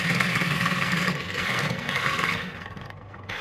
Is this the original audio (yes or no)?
no